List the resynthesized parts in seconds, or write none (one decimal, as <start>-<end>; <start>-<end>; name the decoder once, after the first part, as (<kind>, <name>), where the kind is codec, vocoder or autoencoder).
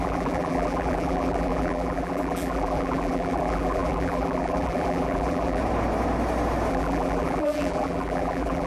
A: 0.0-5.6 (vocoder, BigVGAN v2); 6.7-8.7